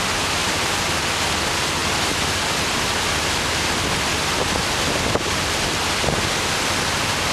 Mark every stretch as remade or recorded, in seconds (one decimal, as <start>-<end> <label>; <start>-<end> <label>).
0.0-0.4 recorded; 0.4-1.0 remade; 1.0-7.3 recorded